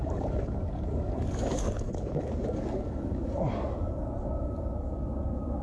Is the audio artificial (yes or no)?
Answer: yes